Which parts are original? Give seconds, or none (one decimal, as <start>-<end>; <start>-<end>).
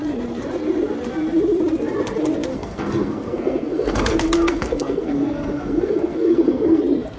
0.0-2.5; 6.8-7.2